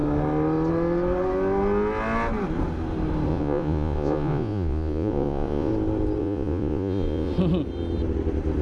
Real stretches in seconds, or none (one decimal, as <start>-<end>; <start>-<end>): 0.0-3.3; 5.7-6.2; 7.3-8.6